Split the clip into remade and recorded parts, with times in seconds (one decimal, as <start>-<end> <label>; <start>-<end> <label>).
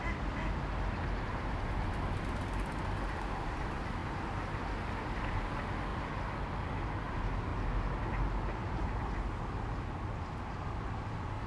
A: 0.0-11.5 recorded